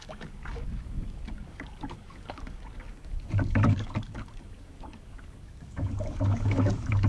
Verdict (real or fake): fake